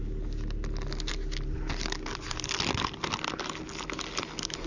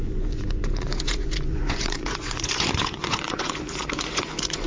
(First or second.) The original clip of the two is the first